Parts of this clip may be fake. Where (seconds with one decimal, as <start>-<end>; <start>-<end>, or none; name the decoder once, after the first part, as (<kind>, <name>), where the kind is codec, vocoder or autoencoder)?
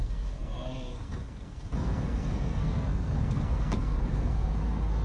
0.0-5.0 (codec, SNAC)